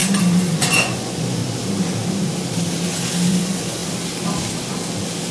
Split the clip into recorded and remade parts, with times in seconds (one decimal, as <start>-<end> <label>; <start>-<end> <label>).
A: 0.0-0.6 recorded; 0.6-1.4 remade; 1.4-3.3 recorded; 3.3-3.8 remade; 3.8-5.3 recorded